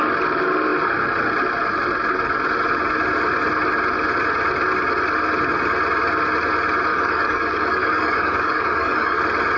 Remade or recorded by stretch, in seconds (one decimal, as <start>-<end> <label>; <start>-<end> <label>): 0.0-6.9 recorded; 6.9-9.2 remade; 9.2-9.6 recorded

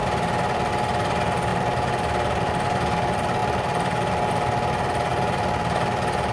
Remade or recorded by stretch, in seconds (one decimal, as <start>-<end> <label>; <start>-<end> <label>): 0.0-0.7 remade; 0.7-3.4 recorded; 3.4-4.3 remade; 4.3-5.1 recorded; 5.1-6.3 remade

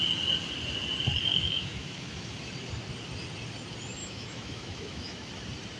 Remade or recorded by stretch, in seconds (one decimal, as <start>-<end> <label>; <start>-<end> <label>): 0.0-1.3 recorded; 1.3-2.3 remade; 2.3-4.0 recorded; 4.0-5.3 remade; 5.3-5.8 recorded

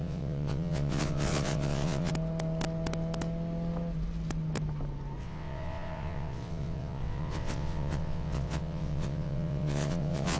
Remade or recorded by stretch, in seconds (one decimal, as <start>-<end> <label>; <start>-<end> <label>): 0.0-2.1 remade; 2.1-5.2 recorded; 5.2-10.4 remade

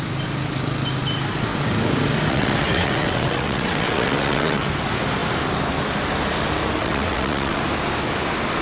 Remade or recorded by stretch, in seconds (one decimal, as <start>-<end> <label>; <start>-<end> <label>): 0.0-2.3 recorded; 2.3-4.7 remade; 4.7-6.8 recorded; 6.8-7.6 remade; 7.6-8.6 recorded

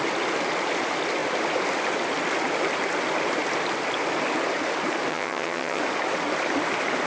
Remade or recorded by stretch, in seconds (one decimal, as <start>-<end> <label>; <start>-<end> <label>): 0.0-5.1 recorded; 5.1-5.8 remade; 5.8-7.1 recorded

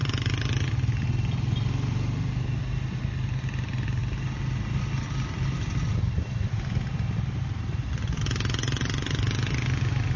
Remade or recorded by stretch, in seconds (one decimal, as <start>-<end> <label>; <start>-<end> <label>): 0.0-5.9 recorded; 5.9-8.2 remade; 8.2-10.2 recorded

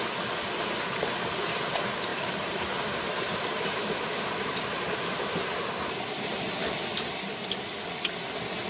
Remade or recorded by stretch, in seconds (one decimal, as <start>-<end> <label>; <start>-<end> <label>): 0.0-2.1 recorded; 2.1-6.4 remade; 6.4-8.7 recorded